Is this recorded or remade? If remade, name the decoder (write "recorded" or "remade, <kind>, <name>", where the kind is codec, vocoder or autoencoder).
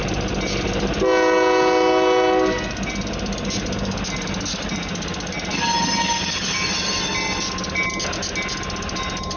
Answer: recorded